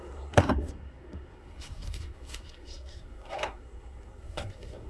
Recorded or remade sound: remade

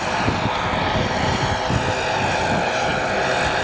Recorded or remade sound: recorded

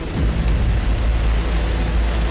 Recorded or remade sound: recorded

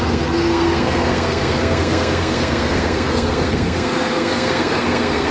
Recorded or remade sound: remade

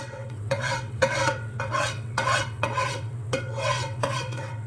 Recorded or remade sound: remade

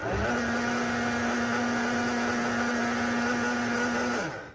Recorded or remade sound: recorded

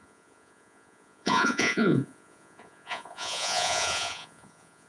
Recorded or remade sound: remade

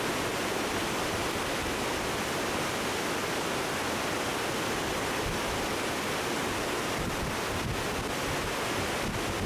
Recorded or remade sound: recorded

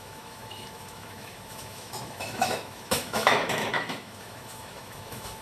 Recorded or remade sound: remade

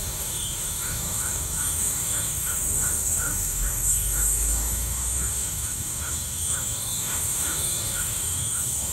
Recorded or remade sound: remade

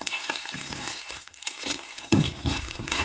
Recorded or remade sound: remade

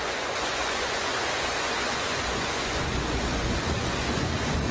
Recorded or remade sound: remade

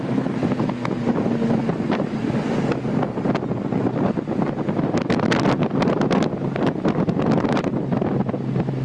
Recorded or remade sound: recorded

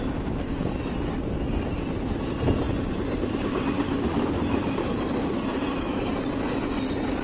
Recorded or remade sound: recorded